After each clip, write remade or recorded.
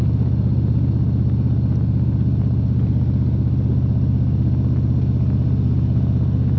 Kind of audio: recorded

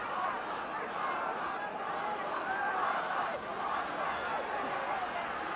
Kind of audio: recorded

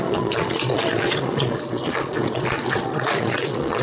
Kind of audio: remade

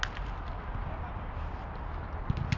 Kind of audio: recorded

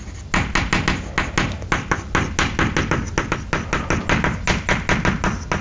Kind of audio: recorded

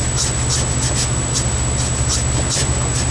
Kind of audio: recorded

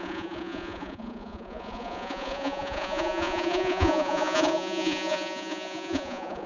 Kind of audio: remade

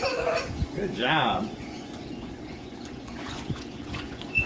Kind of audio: remade